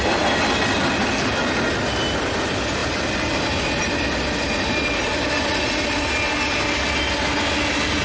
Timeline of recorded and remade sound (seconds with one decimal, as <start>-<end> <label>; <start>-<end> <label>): 0.0-8.0 recorded